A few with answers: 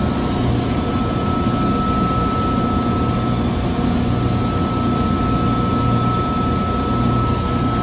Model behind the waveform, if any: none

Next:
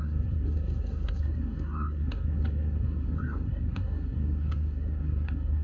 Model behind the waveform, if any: codec, SNAC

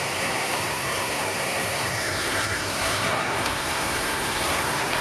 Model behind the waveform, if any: codec, SNAC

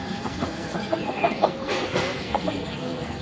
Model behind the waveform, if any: codec, SNAC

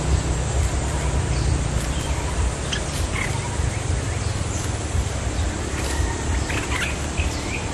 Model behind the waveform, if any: none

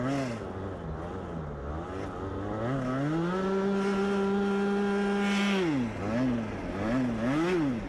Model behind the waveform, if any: none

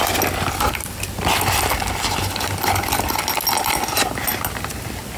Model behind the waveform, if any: none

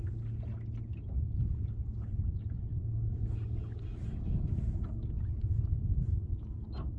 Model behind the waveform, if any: none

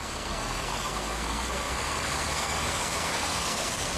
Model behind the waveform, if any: codec, SNAC